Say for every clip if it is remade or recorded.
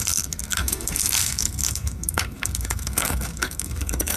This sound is remade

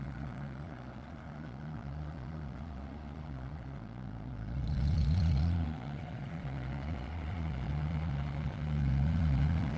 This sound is remade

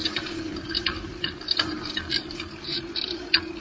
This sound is recorded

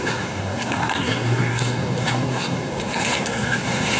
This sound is remade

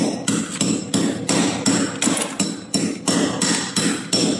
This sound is recorded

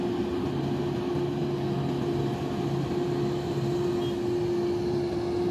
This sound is recorded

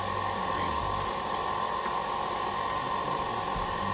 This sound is recorded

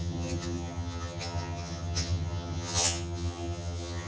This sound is remade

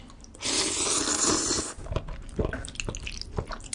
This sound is recorded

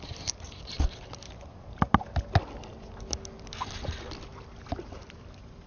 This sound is recorded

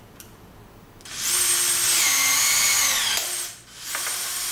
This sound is recorded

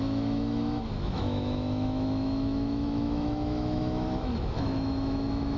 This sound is remade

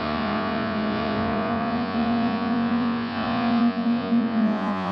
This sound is remade